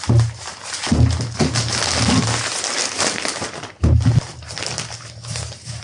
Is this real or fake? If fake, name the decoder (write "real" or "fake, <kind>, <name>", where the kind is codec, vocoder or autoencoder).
real